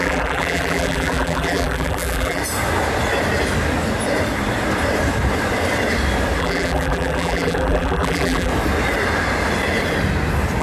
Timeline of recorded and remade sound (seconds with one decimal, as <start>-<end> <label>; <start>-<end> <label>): 0.0-2.4 remade; 2.4-6.4 recorded; 6.4-8.5 remade; 8.5-10.6 recorded